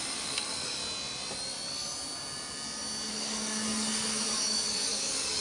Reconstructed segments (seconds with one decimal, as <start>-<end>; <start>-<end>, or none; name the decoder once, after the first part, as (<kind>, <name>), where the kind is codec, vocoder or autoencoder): 0.0-0.8 (codec, DAC); 3.1-5.4